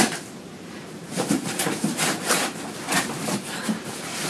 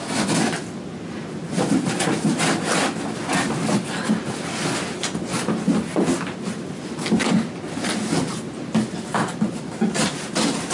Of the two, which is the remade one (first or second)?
first